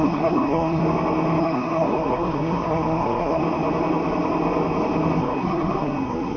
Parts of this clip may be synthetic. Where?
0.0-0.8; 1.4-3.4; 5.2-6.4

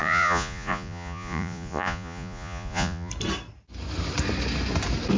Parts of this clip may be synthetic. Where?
0.0-3.1